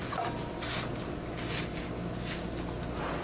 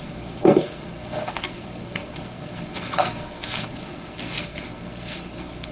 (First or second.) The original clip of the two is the first